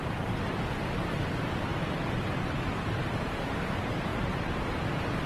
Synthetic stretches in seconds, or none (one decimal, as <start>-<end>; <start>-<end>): 4.1-4.8